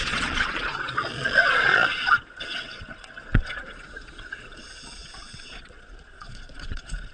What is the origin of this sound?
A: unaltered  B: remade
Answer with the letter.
B